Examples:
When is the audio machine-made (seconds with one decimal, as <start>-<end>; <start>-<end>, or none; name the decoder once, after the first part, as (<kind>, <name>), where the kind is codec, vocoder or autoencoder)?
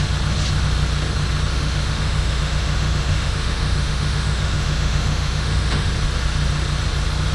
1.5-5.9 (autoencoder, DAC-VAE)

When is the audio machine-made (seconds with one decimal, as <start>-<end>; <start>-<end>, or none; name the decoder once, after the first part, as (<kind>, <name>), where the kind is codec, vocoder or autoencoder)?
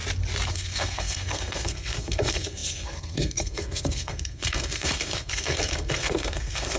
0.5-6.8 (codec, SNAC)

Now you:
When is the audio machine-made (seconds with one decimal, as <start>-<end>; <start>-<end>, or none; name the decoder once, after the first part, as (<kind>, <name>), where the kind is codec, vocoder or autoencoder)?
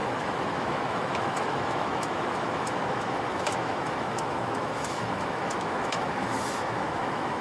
0.0-7.4 (autoencoder, DAC-VAE)